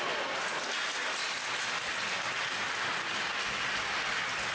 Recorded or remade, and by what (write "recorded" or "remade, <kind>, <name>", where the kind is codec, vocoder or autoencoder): recorded